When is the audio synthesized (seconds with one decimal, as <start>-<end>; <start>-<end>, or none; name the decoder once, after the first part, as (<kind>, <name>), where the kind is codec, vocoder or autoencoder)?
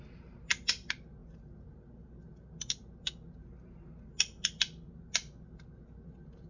none